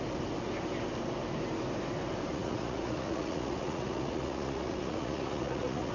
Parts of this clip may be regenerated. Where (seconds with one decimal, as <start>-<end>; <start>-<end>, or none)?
2.3-5.9